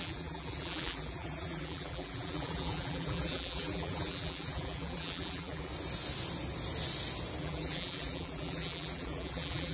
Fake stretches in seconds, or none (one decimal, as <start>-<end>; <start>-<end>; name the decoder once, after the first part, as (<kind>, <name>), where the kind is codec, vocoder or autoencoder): 0.0-5.7 (vocoder, BigVGAN v2); 7.4-9.7

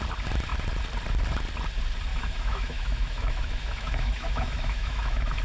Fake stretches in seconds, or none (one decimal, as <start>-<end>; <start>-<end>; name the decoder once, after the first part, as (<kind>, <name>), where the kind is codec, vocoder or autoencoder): 2.1-5.4 (autoencoder, DAC-VAE)

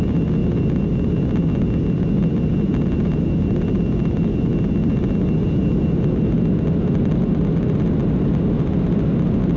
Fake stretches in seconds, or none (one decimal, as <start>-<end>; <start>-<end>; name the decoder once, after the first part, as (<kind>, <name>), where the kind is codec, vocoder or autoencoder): none

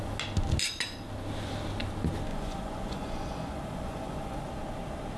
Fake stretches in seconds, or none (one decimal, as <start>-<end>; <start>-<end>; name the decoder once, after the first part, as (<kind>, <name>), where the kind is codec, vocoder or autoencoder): 2.3-4.5 (vocoder, Vocos)

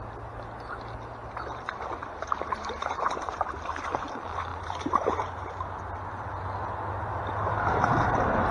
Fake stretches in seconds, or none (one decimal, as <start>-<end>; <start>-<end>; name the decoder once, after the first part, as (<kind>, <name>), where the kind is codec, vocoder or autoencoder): 2.0-3.9 (vocoder, BigVGAN v2); 4.5-5.8

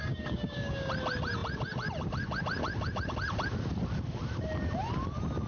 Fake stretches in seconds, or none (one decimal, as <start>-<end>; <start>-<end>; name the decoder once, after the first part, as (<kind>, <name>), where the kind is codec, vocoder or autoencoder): 0.0-0.9 (codec, DAC)

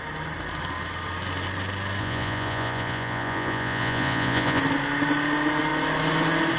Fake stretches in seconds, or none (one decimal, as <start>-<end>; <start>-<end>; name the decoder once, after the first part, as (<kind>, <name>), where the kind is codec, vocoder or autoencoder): 2.0-4.6 (vocoder, Vocos)